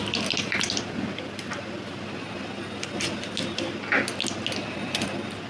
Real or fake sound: real